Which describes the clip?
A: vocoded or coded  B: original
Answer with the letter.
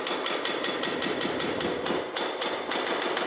B